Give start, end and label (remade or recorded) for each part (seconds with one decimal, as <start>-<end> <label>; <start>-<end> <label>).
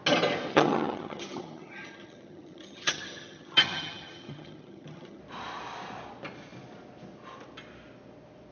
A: 0.0-0.5 recorded; 0.5-5.2 remade; 5.2-8.5 recorded